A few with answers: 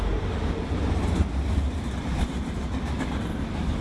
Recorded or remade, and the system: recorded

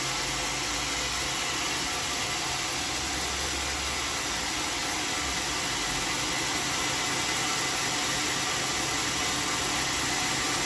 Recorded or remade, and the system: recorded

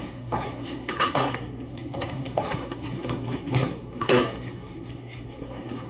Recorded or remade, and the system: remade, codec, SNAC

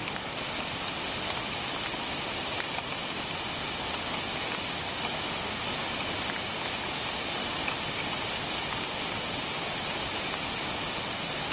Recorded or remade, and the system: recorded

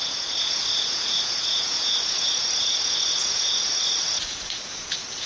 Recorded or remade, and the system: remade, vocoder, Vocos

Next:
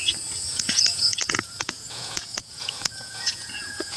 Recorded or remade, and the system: remade, vocoder, Vocos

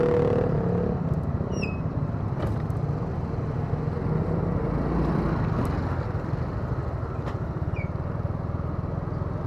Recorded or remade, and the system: recorded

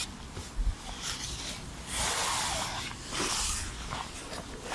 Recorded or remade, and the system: recorded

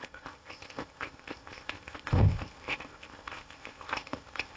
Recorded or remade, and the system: remade, codec, ZipCodec